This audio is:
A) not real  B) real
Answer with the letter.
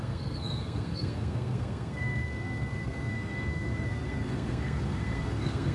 A